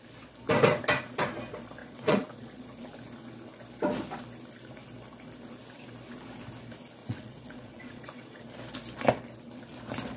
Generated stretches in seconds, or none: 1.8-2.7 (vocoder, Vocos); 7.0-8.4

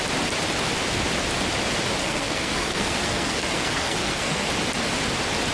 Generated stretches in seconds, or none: 2.0-4.5 (codec, SNAC)